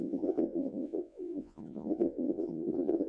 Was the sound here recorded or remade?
remade